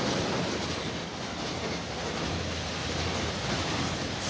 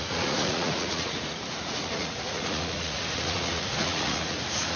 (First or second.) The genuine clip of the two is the first